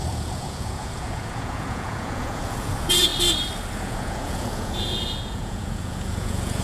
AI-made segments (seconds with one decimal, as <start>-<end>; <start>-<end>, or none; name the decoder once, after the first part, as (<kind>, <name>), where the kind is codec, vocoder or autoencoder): 0.0-3.1 (vocoder, Vocos); 3.7-6.6